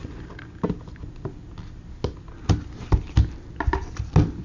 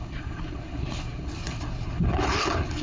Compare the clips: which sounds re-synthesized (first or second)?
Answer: second